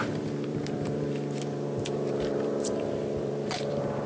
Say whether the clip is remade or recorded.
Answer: remade